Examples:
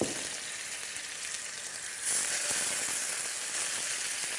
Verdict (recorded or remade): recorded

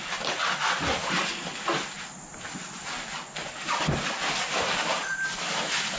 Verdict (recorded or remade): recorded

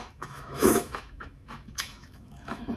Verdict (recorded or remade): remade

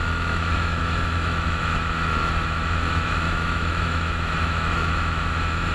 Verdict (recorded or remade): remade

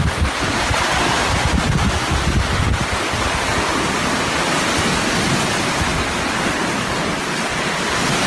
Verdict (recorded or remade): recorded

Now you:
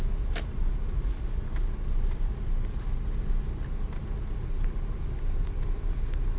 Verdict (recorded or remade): recorded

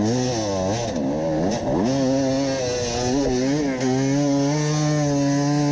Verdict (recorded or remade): recorded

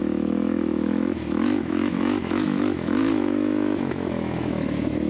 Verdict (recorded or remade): remade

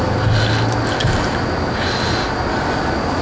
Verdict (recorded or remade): recorded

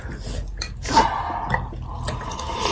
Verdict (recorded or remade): recorded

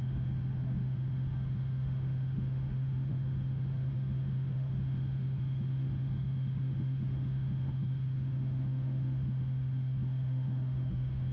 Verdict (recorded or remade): remade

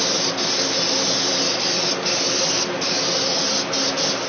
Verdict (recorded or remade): recorded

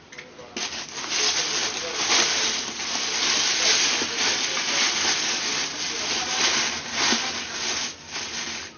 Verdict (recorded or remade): recorded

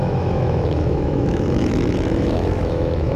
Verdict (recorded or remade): remade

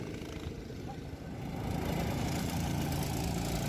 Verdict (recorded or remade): recorded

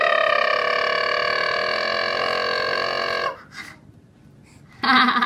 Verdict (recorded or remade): recorded